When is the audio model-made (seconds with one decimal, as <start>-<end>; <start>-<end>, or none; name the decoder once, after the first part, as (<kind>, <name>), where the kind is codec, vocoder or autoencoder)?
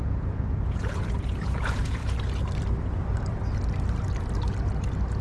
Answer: 0.0-2.0 (vocoder, Vocos)